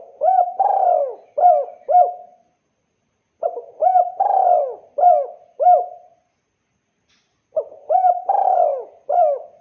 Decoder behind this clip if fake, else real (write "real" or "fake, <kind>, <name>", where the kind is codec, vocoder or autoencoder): real